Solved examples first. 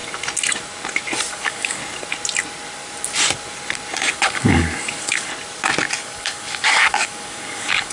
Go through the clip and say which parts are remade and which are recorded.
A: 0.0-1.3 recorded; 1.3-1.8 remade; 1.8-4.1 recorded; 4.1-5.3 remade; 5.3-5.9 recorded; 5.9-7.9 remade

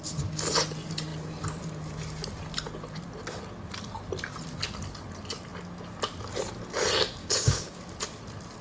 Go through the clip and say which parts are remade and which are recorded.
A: 0.0-7.2 recorded; 7.2-7.8 remade; 7.8-8.6 recorded

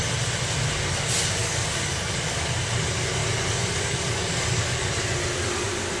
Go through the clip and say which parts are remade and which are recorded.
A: 0.0-1.4 recorded; 1.4-2.7 remade; 2.7-3.2 recorded; 3.2-4.9 remade; 4.9-6.0 recorded

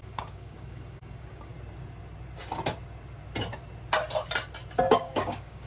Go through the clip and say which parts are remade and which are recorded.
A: 0.0-1.5 remade; 1.5-4.9 recorded; 4.9-5.7 remade

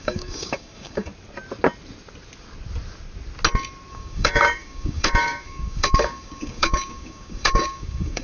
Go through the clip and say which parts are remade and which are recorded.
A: 0.0-1.1 remade; 1.1-3.9 recorded; 3.9-8.2 remade